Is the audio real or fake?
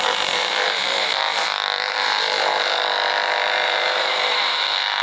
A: fake